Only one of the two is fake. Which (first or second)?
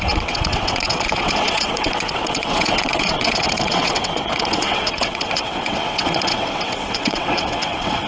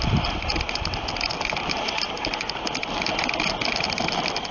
first